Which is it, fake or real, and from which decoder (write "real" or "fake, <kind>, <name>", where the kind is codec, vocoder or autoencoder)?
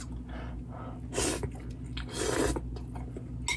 real